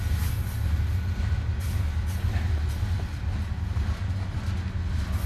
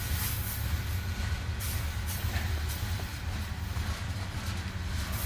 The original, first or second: first